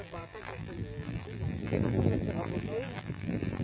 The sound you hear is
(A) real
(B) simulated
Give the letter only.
B